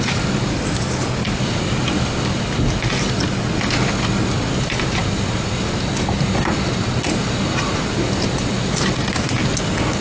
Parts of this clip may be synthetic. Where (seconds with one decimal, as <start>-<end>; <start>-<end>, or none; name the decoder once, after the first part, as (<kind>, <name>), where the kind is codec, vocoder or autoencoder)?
none